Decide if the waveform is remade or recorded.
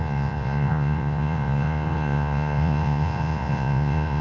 remade